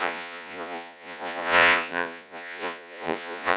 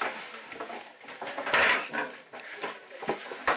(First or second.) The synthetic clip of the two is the first